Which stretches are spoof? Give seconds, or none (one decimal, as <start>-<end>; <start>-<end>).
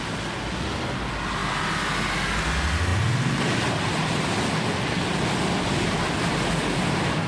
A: none